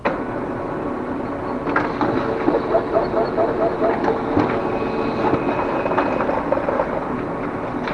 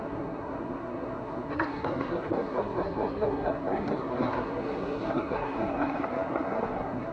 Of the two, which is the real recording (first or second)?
first